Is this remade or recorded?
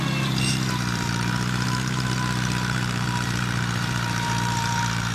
remade